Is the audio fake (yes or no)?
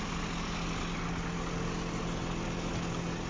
no